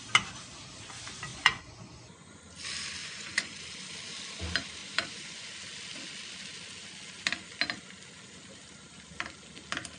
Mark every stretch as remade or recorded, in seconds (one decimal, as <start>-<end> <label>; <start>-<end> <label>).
0.0-1.3 recorded; 1.3-2.4 remade; 2.4-3.0 recorded; 3.0-3.6 remade; 3.6-4.8 recorded; 4.8-5.5 remade; 5.5-10.0 recorded